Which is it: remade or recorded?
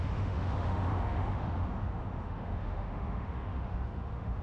remade